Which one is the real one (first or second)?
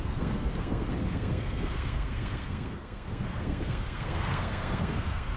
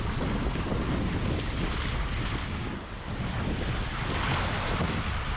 second